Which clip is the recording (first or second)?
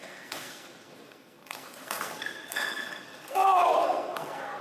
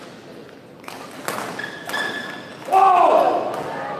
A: second